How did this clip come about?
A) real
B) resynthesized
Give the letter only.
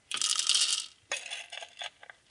A